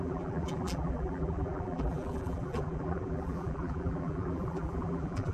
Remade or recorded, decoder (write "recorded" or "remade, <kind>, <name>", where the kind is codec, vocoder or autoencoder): remade, vocoder, BigVGAN v2